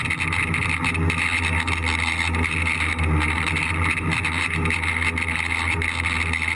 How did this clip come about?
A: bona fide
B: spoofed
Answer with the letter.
A